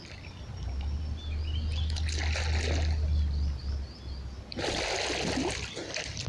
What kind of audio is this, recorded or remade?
recorded